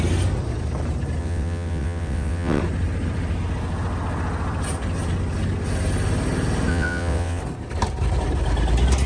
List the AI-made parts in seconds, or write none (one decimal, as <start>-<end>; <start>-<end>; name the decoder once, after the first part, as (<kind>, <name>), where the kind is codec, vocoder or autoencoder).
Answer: 1.2-2.6 (vocoder, WaveNeXt); 6.7-7.4